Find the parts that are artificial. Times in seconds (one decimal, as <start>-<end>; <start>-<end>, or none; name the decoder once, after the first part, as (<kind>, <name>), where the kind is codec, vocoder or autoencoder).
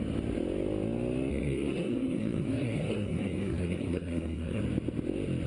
1.3-4.6 (codec, SNAC)